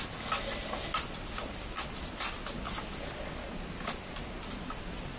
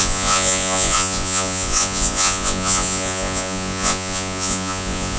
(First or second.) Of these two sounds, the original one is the first